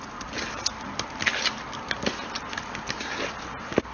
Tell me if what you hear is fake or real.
real